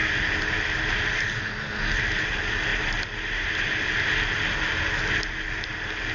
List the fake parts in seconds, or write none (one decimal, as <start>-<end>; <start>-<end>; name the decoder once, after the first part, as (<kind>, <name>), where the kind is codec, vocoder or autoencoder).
none